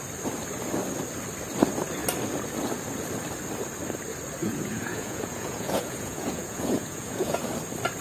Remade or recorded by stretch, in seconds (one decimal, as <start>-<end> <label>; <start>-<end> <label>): 0.0-4.4 recorded; 4.4-7.4 remade; 7.4-8.0 recorded